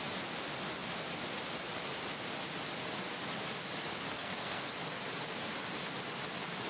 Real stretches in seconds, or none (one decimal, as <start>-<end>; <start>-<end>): 0.0-4.1; 4.7-6.7